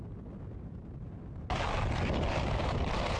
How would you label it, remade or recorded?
recorded